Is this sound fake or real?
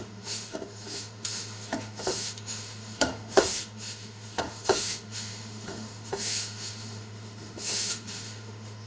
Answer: fake